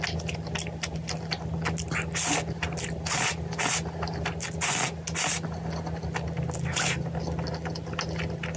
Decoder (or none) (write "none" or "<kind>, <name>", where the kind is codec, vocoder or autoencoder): none